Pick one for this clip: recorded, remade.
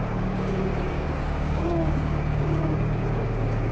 remade